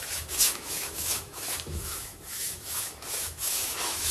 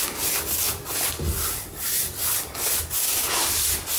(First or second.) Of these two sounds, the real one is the second